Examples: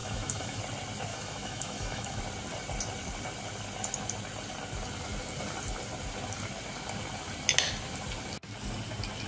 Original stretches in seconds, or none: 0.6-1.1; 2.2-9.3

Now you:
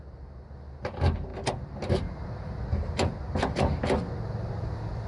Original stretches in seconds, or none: 0.0-5.1

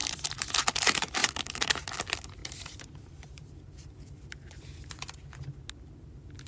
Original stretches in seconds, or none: 0.6-1.2; 1.9-2.4; 5.2-6.5

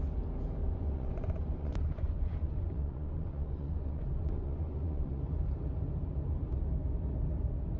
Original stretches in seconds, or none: 0.0-0.6; 5.2-7.8

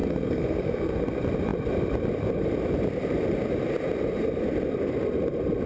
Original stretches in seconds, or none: 1.0-5.7

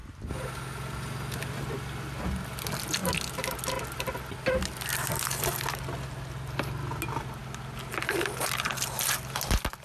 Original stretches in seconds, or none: 0.0-9.8